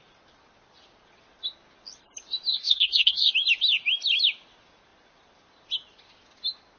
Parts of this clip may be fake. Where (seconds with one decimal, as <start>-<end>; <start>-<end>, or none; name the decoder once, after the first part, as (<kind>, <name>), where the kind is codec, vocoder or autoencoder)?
2.5-3.3 (codec, SNAC)